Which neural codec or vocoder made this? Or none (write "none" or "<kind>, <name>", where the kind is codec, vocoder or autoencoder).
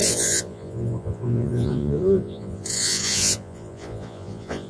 vocoder, Vocos